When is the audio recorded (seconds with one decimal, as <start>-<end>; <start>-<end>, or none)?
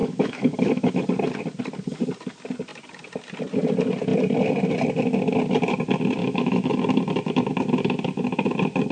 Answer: 1.0-6.2; 6.8-8.9